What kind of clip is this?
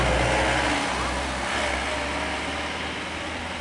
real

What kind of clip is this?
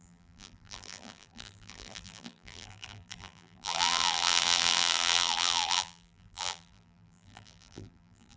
fake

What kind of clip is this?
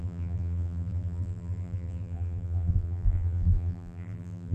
fake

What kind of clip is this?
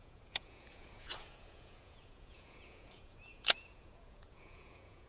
fake